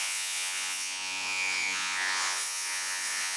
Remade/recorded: remade